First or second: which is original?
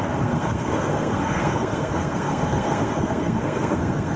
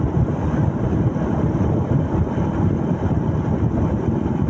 second